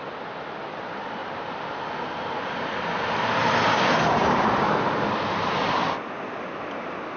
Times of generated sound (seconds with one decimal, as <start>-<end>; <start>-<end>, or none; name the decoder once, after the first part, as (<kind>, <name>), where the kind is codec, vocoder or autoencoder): 1.2-3.0 (vocoder, BigVGAN v2)